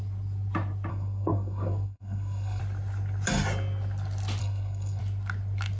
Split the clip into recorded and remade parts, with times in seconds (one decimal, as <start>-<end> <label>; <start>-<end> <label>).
0.0-0.9 recorded; 0.9-2.6 remade; 2.6-4.4 recorded; 4.4-5.0 remade; 5.0-5.8 recorded

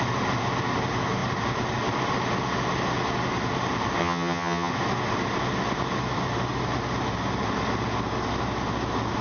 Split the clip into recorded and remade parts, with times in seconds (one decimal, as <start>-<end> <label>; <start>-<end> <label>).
0.0-4.0 recorded; 4.0-4.7 remade; 4.7-9.2 recorded

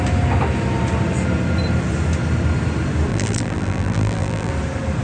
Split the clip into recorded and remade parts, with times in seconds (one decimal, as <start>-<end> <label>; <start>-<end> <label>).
0.0-3.1 recorded; 3.1-4.5 remade; 4.5-5.0 recorded

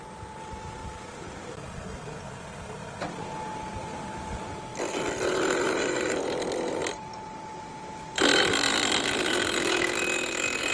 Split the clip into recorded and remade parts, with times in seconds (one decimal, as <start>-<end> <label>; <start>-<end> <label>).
0.0-10.7 recorded